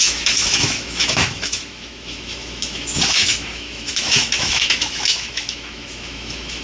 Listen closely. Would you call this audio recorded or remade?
remade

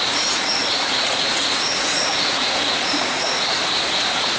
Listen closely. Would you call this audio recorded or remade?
remade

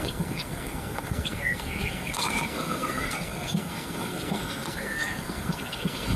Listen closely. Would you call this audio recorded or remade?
remade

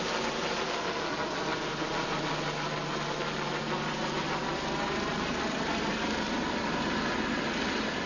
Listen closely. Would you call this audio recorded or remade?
recorded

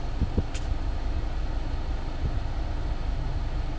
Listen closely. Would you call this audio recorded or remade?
recorded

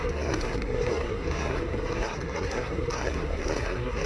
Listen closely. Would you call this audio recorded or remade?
remade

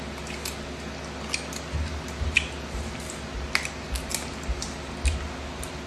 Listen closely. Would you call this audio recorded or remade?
recorded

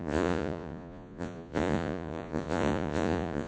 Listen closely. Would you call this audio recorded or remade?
remade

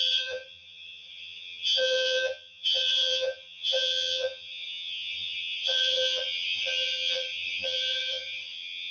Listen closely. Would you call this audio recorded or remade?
remade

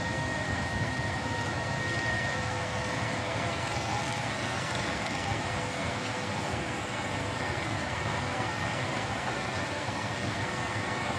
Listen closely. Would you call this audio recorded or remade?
remade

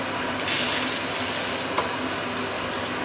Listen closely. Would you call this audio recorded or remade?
recorded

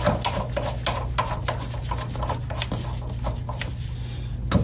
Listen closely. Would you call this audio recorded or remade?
recorded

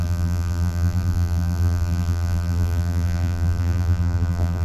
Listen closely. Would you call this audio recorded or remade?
remade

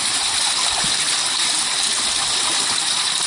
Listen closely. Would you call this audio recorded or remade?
recorded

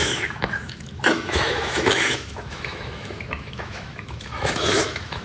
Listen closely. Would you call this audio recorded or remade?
remade